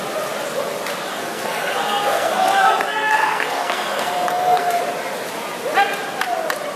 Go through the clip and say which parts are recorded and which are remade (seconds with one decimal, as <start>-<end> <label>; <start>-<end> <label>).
0.0-1.1 recorded; 1.1-4.8 remade; 4.8-6.8 recorded